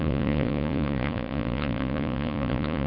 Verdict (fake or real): fake